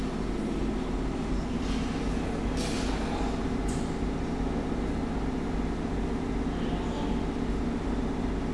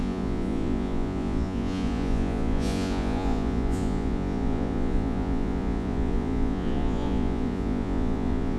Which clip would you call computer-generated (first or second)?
second